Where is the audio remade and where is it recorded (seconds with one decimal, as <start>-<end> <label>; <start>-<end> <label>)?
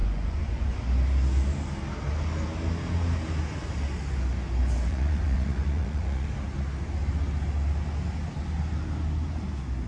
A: 0.0-0.8 remade; 0.8-4.9 recorded; 4.9-6.3 remade; 6.3-9.9 recorded